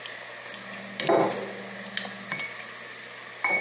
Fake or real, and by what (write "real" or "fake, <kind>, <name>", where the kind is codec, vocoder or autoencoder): real